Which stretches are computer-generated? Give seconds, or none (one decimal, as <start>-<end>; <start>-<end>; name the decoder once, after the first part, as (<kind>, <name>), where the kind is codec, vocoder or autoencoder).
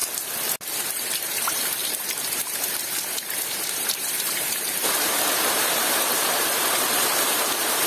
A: 0.8-7.9 (vocoder, BigVGAN v2)